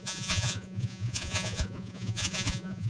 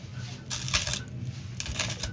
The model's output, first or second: first